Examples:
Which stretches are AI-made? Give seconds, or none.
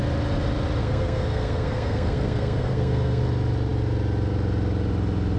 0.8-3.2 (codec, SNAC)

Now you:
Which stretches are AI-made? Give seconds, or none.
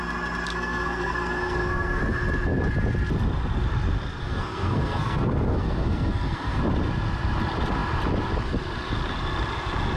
0.5-2.0 (codec, SNAC); 4.2-6.6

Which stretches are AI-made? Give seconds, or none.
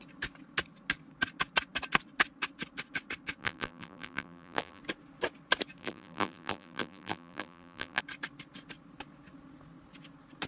3.4-4.8 (vocoder, BigVGAN v2); 5.8-8.0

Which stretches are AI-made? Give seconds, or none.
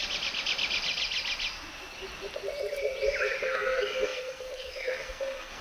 3.4-5.6 (codec, SNAC)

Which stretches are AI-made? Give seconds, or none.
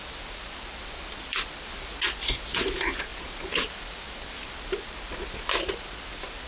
none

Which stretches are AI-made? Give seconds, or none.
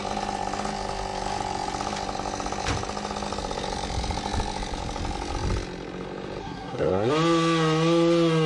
6.4-7.1 (codec, SNAC)